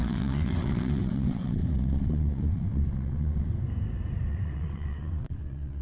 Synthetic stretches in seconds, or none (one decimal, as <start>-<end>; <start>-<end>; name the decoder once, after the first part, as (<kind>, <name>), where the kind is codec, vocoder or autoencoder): 0.0-3.5 (vocoder, WaveNeXt); 4.3-5.8